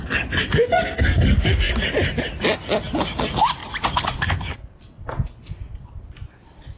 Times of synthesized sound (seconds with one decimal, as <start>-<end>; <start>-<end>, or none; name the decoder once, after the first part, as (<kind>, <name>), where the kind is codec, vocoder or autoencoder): 0.4-1.8 (codec, SNAC)